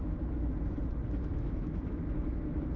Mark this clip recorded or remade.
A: remade